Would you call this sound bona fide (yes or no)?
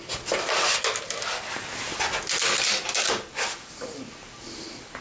yes